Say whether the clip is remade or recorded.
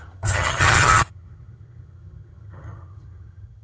remade